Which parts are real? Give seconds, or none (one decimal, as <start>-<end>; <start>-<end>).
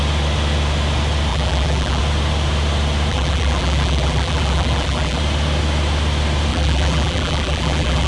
0.0-1.3; 2.0-3.1; 5.2-6.5